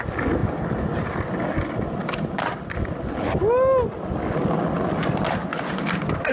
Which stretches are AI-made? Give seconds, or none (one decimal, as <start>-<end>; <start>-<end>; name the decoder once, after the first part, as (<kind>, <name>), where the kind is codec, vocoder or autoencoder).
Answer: none